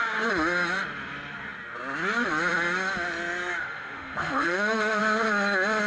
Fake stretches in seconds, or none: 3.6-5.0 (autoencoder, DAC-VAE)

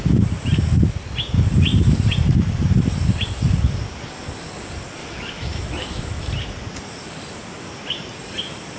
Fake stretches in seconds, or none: 5.0-6.3 (autoencoder, DAC-VAE)

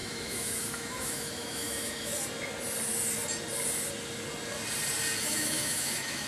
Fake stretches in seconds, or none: 0.0-2.1 (autoencoder, DAC-VAE); 5.2-6.3

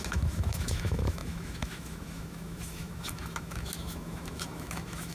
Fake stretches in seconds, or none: 0.0-5.1 (autoencoder, DAC-VAE)

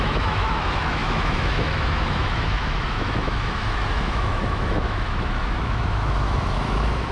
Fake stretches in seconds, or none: 0.0-7.1 (autoencoder, DAC-VAE)

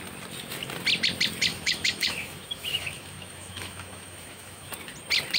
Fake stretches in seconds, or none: 1.5-4.7 (autoencoder, DAC-VAE)

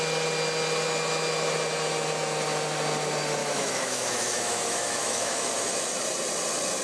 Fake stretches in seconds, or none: 3.4-5.5 (autoencoder, DAC-VAE)

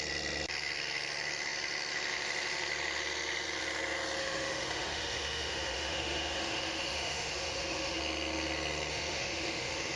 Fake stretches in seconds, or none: 4.2-8.0 (autoencoder, DAC-VAE); 8.9-10.0